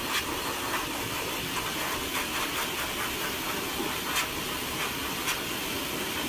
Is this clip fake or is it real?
real